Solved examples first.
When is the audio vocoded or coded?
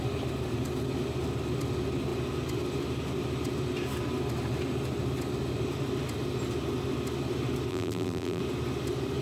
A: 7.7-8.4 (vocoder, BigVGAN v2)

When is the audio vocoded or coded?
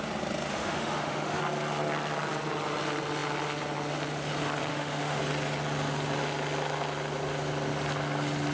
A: 0.5-1.4 (autoencoder, DAC-VAE); 4.7-5.2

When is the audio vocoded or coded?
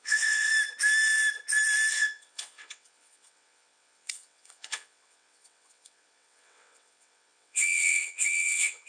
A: 0.0-0.5 (vocoder, WaveNeXt); 1.9-8.9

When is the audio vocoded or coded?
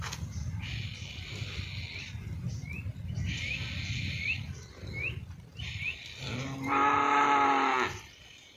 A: none